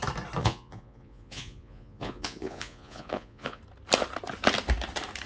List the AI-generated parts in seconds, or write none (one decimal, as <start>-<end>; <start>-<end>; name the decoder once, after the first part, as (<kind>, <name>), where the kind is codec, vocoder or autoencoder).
0.4-3.6 (vocoder, Vocos)